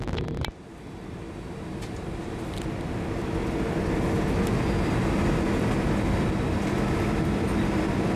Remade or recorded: recorded